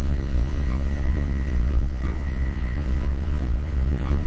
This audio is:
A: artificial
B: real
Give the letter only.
A